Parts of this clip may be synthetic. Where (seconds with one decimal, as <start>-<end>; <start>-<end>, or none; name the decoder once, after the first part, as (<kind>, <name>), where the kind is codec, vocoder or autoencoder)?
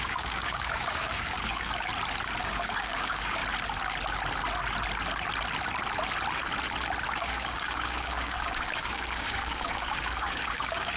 0.0-1.9 (codec, DAC); 2.4-3.4; 7.1-11.0